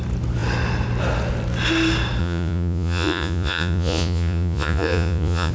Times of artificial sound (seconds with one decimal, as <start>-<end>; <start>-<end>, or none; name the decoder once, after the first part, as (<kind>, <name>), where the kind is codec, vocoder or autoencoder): 2.2-5.5 (vocoder, Vocos)